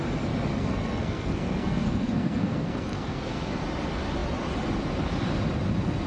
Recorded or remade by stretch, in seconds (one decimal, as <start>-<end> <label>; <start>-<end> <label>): 0.0-0.5 recorded; 0.5-3.6 remade; 3.6-6.1 recorded